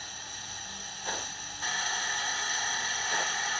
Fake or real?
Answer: real